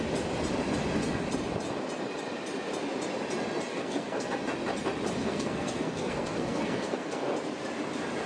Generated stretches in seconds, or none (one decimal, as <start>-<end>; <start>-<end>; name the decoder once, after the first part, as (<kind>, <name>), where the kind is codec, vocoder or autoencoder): 3.7-4.4 (codec, SNAC); 5.2-7.3